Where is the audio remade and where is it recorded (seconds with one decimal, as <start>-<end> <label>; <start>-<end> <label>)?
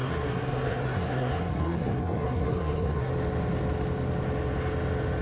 0.0-3.1 remade; 3.1-5.2 recorded